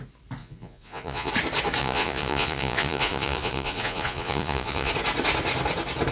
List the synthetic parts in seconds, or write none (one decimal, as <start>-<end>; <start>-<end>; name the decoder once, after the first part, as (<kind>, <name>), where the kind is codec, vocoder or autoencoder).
0.4-1.3 (vocoder, Vocos); 1.8-4.9